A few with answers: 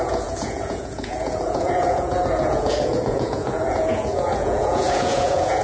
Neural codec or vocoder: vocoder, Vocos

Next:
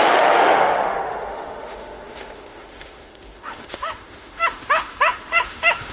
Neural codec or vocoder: autoencoder, DAC-VAE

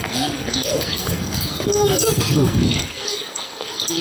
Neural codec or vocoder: codec, SNAC